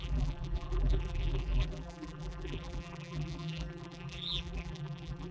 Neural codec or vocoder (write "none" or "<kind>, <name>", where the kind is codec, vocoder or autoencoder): vocoder, BigVGAN v2